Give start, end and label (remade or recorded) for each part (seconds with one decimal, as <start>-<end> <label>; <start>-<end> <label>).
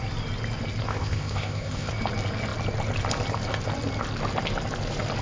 0.0-0.9 recorded; 0.9-1.9 remade; 1.9-5.2 recorded